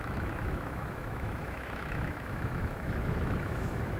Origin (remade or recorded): remade